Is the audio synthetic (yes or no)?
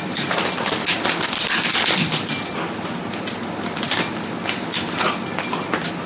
no